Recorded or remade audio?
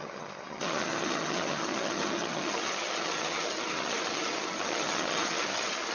remade